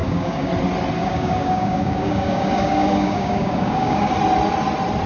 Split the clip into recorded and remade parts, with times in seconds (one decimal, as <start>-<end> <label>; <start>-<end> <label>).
0.0-0.5 remade; 0.5-1.0 recorded; 1.0-4.1 remade; 4.1-5.1 recorded